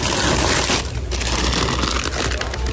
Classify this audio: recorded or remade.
recorded